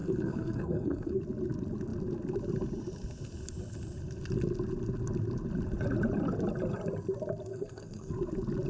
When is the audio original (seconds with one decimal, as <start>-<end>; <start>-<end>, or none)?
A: 1.2-7.5; 8.1-8.7